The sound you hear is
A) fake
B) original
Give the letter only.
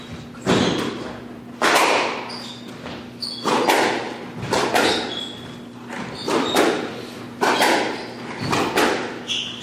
B